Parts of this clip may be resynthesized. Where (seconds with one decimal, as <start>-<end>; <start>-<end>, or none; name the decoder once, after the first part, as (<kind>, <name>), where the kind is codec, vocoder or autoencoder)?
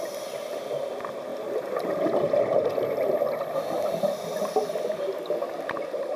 none